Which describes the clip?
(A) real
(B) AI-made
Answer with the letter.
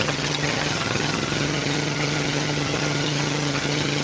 B